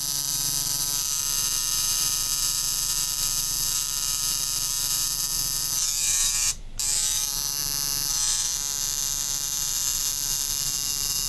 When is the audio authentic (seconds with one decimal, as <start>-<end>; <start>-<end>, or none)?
7.6-8.1